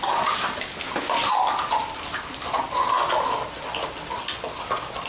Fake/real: real